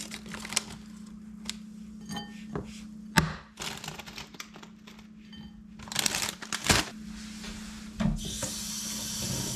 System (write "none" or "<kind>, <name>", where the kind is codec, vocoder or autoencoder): none